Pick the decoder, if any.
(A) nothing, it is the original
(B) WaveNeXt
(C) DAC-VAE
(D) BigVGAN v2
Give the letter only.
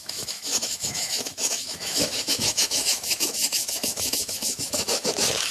C